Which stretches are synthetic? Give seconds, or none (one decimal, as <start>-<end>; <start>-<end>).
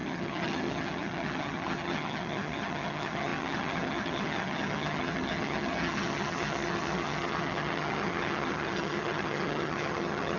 0.0-10.4